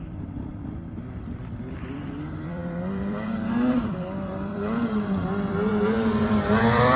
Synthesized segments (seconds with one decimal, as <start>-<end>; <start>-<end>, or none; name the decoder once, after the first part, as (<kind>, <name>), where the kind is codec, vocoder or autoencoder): 0.0-7.0 (vocoder, BigVGAN v2)